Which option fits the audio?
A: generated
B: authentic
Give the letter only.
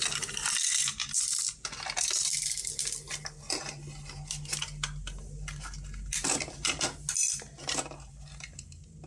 B